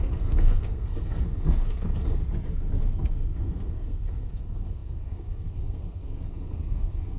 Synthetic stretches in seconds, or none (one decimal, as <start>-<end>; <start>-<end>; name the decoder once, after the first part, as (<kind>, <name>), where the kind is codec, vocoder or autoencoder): 0.0-2.2 (codec, SNAC); 2.8-7.2